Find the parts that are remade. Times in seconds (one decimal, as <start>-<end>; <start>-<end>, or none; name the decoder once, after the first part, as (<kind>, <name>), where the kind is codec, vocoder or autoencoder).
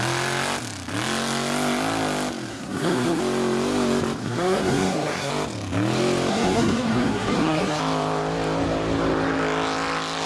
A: 2.5-3.2 (codec, SNAC); 4.2-5.3; 6.3-7.8